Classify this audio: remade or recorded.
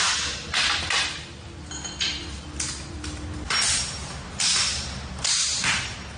recorded